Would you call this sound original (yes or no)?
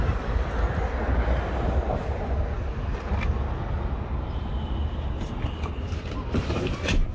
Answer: yes